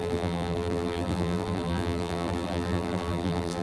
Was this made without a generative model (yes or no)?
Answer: no